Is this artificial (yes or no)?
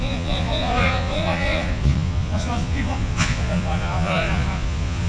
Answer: yes